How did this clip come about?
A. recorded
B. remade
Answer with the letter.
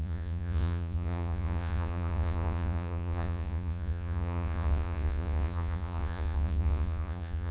B